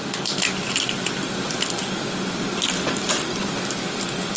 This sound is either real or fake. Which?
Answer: real